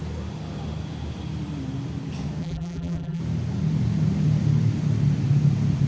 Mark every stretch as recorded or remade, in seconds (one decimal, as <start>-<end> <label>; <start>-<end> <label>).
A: 0.0-2.4 recorded; 2.4-3.2 remade; 3.2-5.9 recorded